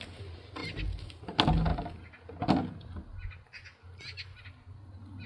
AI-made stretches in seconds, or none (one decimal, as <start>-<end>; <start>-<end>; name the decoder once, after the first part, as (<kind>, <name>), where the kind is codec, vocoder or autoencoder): none